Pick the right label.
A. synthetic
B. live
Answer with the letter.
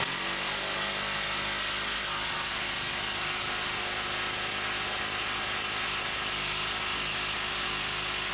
B